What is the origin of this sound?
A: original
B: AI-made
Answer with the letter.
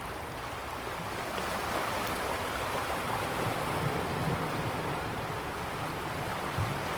A